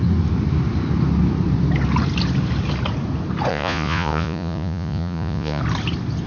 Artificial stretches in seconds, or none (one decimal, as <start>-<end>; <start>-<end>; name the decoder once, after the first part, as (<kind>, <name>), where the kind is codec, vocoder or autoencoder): 3.5-5.6 (vocoder, Vocos)